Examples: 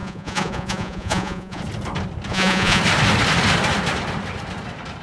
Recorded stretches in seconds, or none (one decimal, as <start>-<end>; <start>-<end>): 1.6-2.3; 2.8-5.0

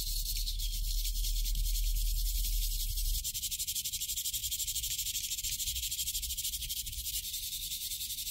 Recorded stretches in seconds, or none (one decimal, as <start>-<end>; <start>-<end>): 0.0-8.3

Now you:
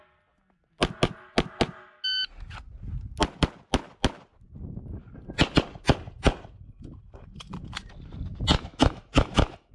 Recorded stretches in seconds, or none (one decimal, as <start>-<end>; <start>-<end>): 0.0-8.7

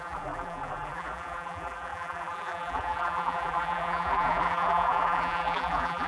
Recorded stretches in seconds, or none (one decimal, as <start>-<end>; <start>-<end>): none